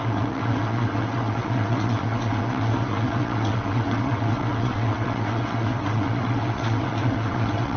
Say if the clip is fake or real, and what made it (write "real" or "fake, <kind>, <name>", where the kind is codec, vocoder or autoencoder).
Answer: fake, vocoder, WaveNeXt